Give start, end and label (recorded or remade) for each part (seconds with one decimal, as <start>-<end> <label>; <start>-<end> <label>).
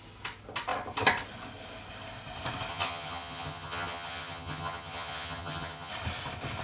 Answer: 0.0-2.7 recorded; 2.7-5.9 remade; 5.9-6.6 recorded